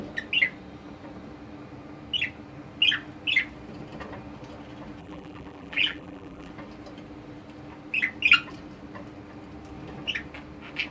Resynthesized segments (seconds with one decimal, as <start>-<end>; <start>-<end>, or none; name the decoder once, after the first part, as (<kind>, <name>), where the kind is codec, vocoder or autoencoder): 5.0-6.5 (vocoder, BigVGAN v2)